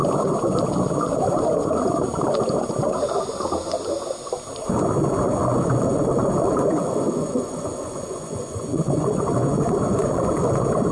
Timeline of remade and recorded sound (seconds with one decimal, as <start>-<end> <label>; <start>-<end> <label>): 0.0-5.3 recorded; 5.3-10.9 remade